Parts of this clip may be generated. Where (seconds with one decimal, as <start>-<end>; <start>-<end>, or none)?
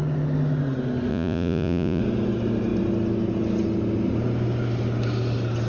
1.1-2.0